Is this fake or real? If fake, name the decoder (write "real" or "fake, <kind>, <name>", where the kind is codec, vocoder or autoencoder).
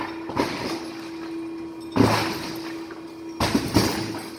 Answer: real